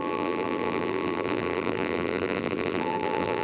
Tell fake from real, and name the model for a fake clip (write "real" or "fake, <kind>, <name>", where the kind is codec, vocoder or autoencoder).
fake, vocoder, BigVGAN v2